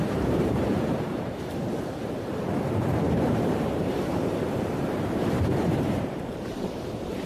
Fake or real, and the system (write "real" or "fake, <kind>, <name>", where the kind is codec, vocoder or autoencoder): fake, vocoder, BigVGAN v2